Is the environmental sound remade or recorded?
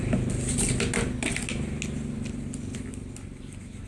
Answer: recorded